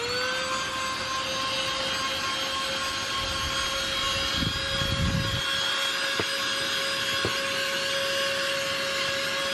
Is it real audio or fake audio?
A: real